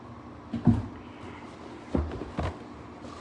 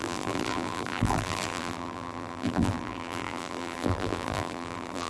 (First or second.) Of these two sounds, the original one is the first